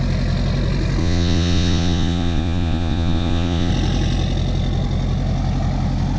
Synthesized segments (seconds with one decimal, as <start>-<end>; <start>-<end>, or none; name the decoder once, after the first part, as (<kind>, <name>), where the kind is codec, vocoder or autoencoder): 1.0-3.7 (vocoder, Vocos)